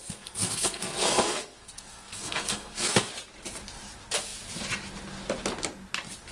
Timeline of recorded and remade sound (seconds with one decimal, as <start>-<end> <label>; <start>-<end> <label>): 0.0-3.1 remade; 3.1-6.3 recorded